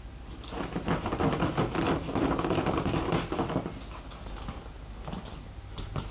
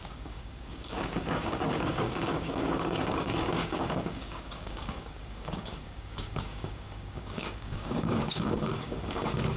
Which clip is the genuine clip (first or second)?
first